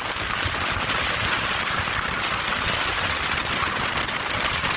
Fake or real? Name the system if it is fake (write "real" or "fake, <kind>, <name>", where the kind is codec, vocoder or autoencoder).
real